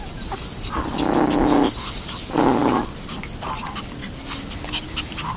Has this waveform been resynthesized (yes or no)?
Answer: no